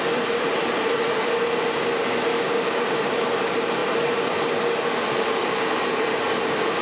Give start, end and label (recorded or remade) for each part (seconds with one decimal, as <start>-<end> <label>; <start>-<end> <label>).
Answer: 0.0-2.3 recorded; 2.3-3.1 remade; 3.1-6.8 recorded